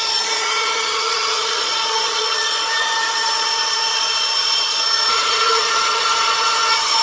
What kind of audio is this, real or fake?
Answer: fake